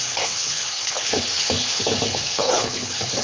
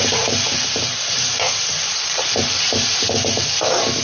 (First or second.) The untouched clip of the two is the second